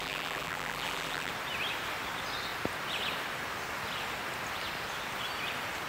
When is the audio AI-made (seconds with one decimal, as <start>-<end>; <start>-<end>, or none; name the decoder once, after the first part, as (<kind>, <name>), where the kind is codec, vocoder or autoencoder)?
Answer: 0.0-1.3 (vocoder, BigVGAN v2)